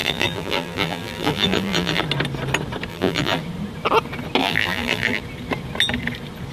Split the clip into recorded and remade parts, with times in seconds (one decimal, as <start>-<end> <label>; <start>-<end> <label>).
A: 0.0-2.0 remade; 2.0-2.9 recorded; 2.9-3.4 remade; 3.4-4.4 recorded; 4.4-5.2 remade; 5.2-6.5 recorded